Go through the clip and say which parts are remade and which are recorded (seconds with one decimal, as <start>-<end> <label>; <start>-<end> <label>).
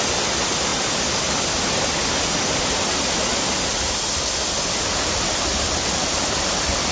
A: 0.0-4.9 recorded; 4.9-5.5 remade; 5.5-6.9 recorded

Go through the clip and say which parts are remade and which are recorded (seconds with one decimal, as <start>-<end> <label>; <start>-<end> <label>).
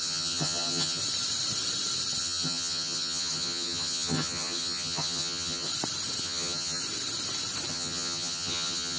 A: 0.0-1.0 remade; 1.0-2.2 recorded; 2.2-5.7 remade; 5.7-6.2 recorded; 6.2-6.8 remade; 6.8-7.7 recorded; 7.7-9.0 remade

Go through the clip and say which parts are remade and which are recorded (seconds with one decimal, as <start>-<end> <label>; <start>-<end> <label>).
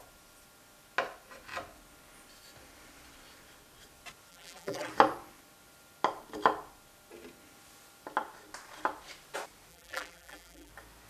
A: 0.0-4.3 recorded; 4.3-4.9 remade; 4.9-9.7 recorded; 9.7-10.7 remade; 10.7-11.1 recorded